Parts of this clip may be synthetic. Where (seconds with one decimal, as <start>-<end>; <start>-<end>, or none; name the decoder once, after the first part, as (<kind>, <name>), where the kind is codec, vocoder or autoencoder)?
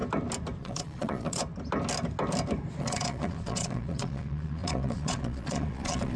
0.6-1.4 (vocoder, Vocos); 2.8-6.2